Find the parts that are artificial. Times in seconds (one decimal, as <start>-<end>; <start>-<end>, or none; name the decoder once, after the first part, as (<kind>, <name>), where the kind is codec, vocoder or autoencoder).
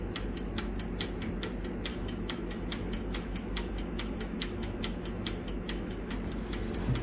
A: 1.9-6.1 (autoencoder, DAC-VAE)